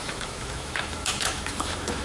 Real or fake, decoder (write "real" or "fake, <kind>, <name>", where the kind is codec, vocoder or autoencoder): fake, autoencoder, DAC-VAE